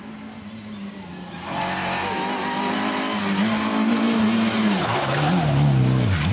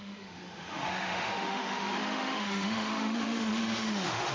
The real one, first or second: first